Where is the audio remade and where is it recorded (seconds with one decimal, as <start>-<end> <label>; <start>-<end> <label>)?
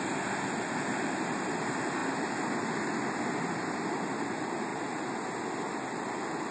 0.0-6.5 recorded